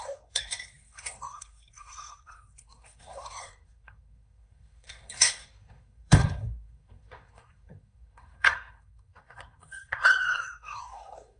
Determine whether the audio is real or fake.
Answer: fake